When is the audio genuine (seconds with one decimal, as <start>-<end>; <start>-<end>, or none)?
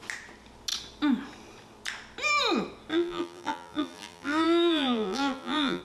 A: 0.0-2.9